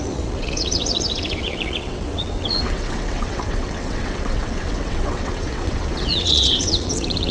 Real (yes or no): no